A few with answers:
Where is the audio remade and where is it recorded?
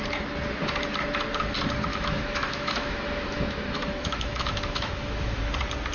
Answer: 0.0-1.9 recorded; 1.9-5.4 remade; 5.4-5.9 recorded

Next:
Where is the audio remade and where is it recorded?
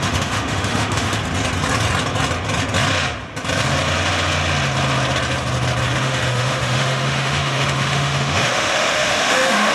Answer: 0.0-1.2 remade; 1.2-6.0 recorded; 6.0-9.7 remade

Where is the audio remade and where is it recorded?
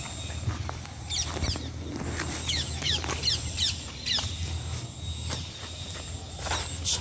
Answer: 0.0-2.4 recorded; 2.4-3.0 remade; 3.0-7.0 recorded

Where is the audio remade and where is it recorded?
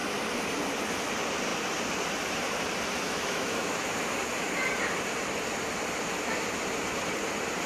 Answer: 0.0-3.0 recorded; 3.0-3.9 remade; 3.9-7.7 recorded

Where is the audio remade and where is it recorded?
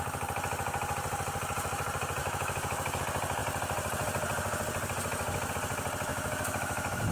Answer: 0.0-2.2 recorded; 2.2-3.0 remade; 3.0-6.1 recorded; 6.1-7.1 remade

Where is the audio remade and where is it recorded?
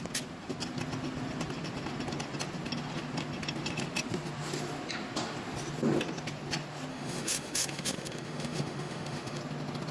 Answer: 0.0-6.9 recorded; 6.9-9.4 remade; 9.4-9.9 recorded